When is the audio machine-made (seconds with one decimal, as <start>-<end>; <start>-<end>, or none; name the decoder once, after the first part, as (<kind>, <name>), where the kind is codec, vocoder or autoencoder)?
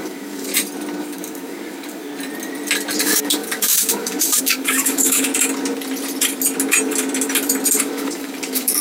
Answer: 0.0-0.5 (codec, DAC); 1.0-2.1; 3.0-5.3; 7.8-8.8